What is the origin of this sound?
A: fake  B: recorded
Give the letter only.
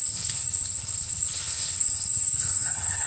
A